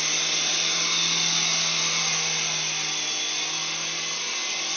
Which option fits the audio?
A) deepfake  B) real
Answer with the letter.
B